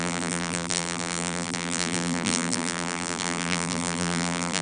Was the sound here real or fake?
fake